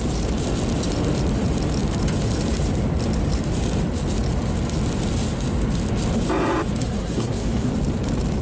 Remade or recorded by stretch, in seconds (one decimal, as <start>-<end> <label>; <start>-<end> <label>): 0.0-6.8 recorded; 6.8-7.7 remade; 7.7-8.4 recorded